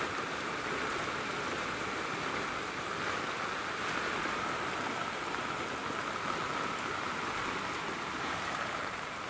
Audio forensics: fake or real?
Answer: real